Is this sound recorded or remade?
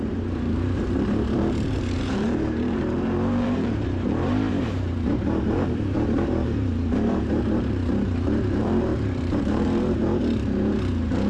remade